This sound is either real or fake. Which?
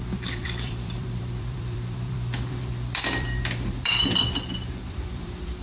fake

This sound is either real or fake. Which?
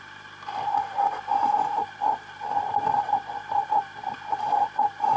fake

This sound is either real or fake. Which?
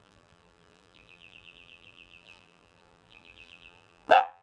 fake